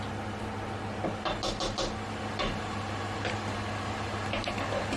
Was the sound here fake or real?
real